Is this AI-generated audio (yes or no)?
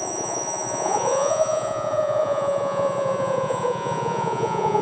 yes